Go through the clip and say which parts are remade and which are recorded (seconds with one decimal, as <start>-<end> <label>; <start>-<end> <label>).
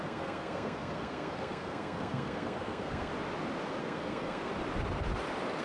0.0-3.1 remade; 3.1-3.8 recorded; 3.8-4.5 remade; 4.5-5.6 recorded